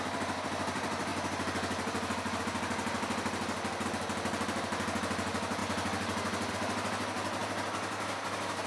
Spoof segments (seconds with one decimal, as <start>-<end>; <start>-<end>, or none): none